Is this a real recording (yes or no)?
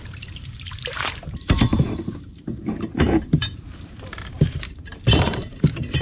no